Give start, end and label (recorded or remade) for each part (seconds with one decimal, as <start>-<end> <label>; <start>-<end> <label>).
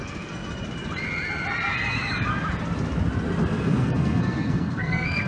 0.0-0.4 remade; 0.4-3.6 recorded; 3.6-5.3 remade